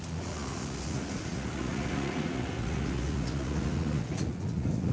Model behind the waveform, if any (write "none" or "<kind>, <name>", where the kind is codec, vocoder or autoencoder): vocoder, Vocos